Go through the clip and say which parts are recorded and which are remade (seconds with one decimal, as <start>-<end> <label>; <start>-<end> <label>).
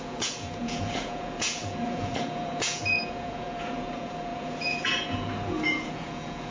0.0-6.5 remade